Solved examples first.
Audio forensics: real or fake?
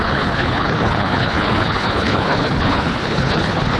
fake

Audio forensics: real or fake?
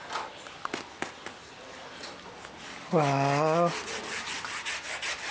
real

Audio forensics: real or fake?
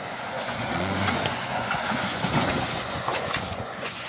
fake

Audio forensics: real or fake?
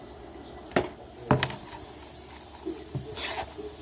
real